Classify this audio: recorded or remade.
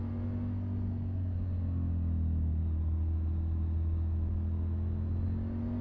recorded